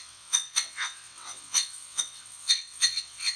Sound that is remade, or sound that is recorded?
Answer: remade